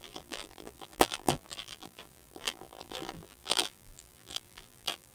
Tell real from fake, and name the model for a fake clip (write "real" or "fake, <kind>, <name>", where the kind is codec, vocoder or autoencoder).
fake, vocoder, BigVGAN v2